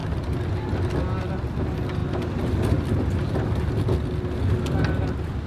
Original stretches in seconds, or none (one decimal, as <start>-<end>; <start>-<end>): 0.0-5.5